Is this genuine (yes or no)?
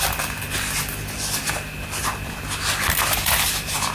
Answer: yes